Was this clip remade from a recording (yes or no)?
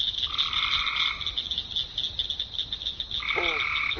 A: no